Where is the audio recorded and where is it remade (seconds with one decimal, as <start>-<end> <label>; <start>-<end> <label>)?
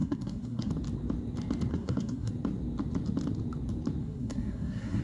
0.0-0.7 remade; 0.7-1.7 recorded; 1.7-2.3 remade; 2.3-4.0 recorded; 4.0-5.0 remade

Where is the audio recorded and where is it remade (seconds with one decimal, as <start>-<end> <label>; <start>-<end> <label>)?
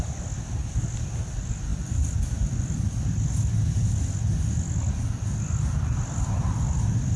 0.0-7.2 recorded